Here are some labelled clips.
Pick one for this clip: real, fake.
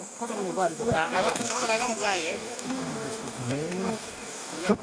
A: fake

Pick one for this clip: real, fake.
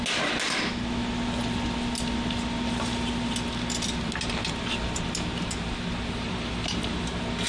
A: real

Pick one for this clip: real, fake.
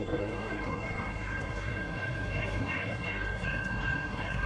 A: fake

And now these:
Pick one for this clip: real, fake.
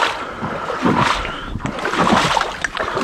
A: real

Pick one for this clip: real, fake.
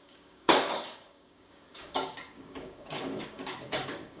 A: fake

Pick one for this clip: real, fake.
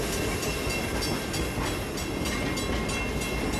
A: real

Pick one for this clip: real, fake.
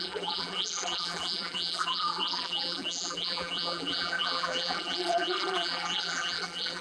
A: fake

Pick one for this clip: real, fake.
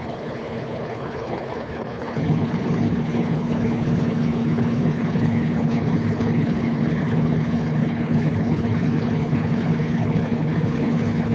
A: fake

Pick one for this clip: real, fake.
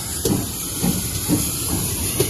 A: real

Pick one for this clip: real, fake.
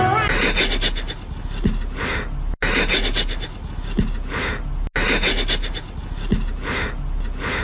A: real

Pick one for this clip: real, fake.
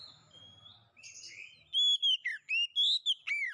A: real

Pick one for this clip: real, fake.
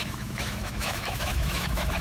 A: fake